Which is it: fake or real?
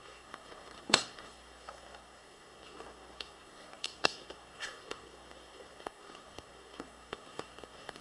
fake